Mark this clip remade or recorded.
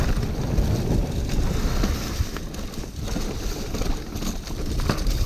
recorded